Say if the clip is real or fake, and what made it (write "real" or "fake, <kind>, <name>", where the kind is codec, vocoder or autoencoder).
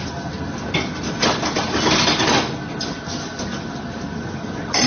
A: real